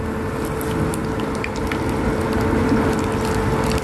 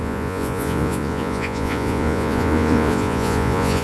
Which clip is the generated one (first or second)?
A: second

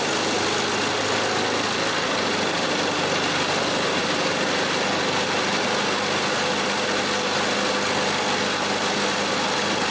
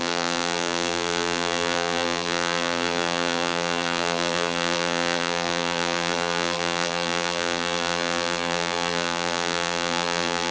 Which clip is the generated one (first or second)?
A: second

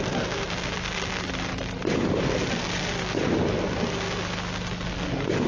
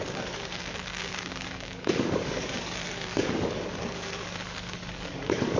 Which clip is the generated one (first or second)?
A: second